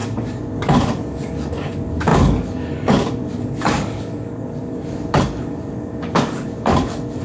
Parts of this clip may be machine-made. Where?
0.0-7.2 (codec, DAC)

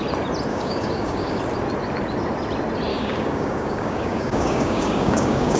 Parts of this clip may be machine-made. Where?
0.5-1.4 (codec, DAC); 2.9-5.6

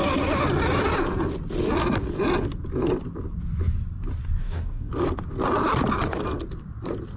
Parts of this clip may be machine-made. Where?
4.4-4.9 (codec, DAC)

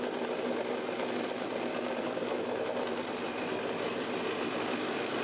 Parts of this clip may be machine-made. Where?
1.7-2.4 (codec, DAC); 4.7-5.2

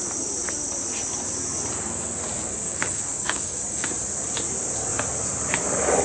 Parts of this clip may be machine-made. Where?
2.5-3.9 (codec, DAC)

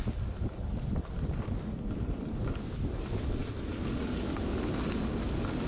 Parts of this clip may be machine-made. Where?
none

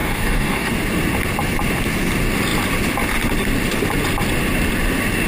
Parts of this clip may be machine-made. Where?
0.0-0.7 (codec, DAC)

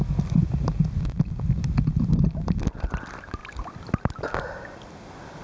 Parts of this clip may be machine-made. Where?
none